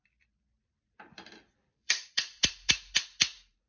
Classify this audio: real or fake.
fake